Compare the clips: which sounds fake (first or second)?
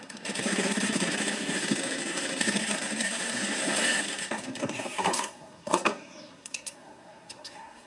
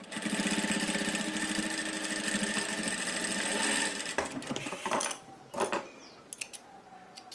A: first